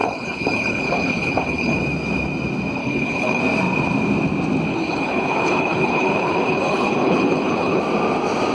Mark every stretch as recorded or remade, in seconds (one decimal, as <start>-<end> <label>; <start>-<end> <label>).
0.0-1.8 remade; 1.8-2.8 recorded; 2.8-3.4 remade; 3.4-4.7 recorded; 4.7-7.8 remade; 7.8-8.5 recorded